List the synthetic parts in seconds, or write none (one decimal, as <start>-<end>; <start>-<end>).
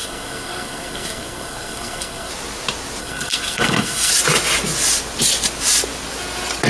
0.0-2.3; 3.0-4.1